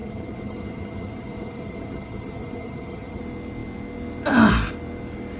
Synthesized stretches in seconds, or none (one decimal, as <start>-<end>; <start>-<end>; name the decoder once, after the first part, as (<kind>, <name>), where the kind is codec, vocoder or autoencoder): 0.0-3.2 (vocoder, HiFi-GAN)